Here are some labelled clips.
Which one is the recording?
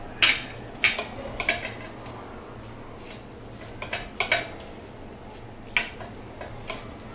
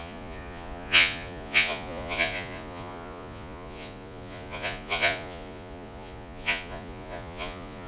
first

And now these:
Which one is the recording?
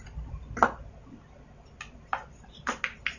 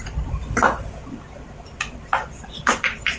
first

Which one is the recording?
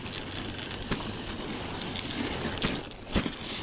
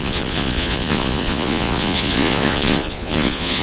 first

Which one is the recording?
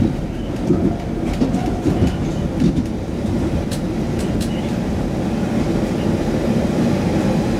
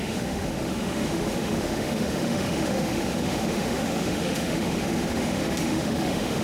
first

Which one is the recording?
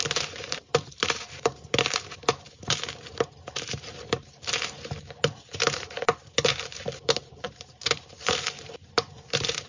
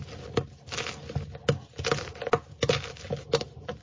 second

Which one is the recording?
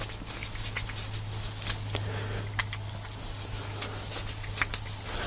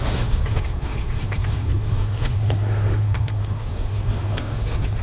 first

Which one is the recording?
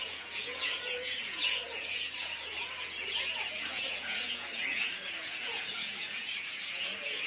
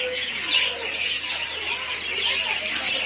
second